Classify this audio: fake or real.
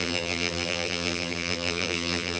fake